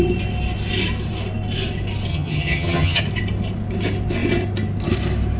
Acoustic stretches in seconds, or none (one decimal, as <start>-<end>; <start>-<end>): 0.0-2.1; 3.0-5.4